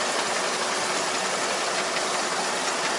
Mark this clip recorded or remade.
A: recorded